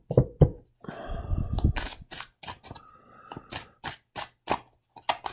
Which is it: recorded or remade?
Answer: recorded